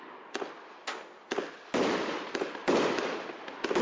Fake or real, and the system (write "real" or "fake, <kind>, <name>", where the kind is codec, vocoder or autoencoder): real